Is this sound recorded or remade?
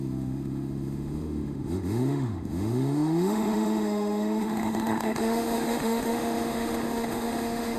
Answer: remade